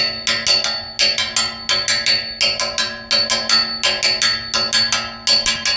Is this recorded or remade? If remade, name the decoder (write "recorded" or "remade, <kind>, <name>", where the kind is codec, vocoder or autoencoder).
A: recorded